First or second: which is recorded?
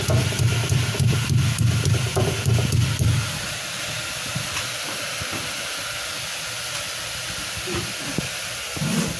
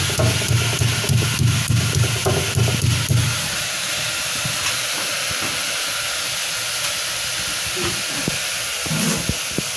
second